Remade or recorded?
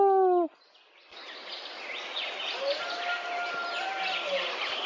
recorded